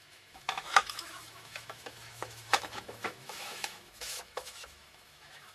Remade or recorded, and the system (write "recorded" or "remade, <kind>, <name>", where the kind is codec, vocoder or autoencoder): remade, autoencoder, DAC-VAE